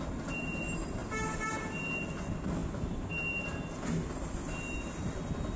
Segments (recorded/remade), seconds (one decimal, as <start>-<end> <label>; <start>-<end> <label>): 0.0-5.6 recorded